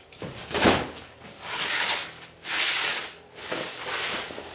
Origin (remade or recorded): remade